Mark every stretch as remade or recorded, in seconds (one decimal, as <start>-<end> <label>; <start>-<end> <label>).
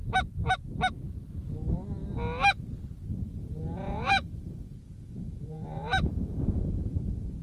0.0-3.4 recorded; 3.4-7.4 remade